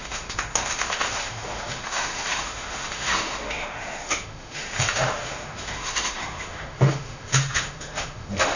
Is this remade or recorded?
remade